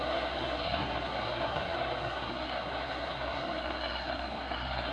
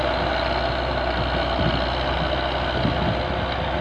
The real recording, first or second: second